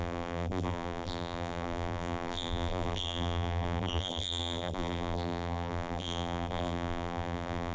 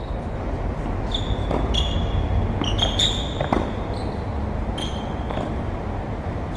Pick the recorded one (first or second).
second